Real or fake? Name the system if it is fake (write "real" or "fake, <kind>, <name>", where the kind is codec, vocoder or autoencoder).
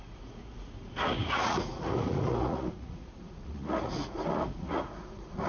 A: fake, vocoder, Vocos